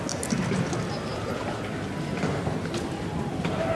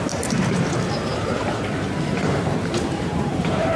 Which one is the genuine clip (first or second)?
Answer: first